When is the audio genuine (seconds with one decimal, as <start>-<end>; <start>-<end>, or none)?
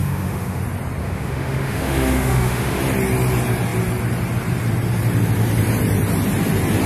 0.6-1.0; 2.8-6.9